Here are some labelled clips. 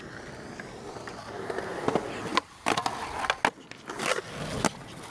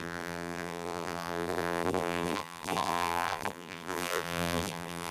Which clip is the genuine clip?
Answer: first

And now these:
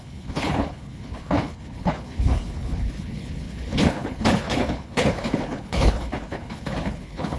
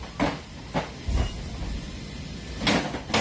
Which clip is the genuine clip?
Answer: second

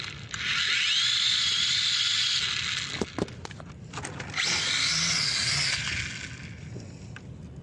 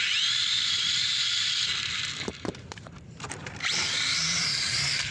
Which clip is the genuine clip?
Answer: first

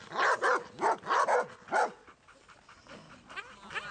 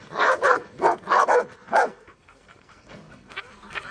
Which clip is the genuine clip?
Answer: first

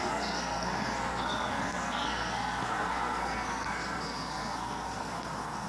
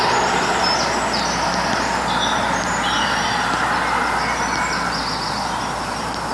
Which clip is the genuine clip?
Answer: second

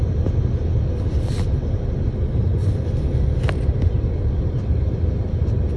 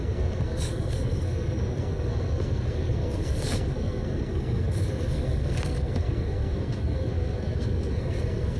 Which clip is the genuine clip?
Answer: first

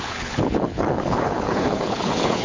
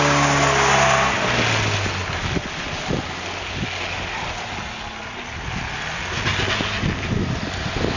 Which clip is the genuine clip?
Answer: second